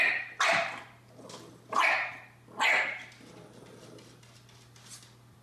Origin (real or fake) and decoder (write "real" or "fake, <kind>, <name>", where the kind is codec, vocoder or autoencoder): real